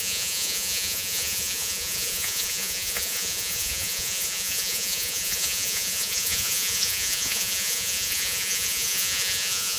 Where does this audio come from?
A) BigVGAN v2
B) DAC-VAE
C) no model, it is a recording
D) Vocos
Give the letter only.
D